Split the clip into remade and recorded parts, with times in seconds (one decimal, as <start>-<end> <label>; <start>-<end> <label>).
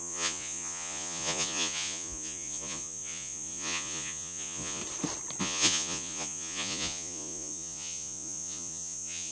0.0-4.8 remade; 4.8-5.4 recorded; 5.4-9.3 remade